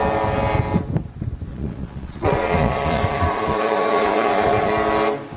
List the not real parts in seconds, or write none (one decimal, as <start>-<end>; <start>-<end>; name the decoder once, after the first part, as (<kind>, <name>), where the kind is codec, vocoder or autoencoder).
1.5-4.7 (vocoder, Vocos)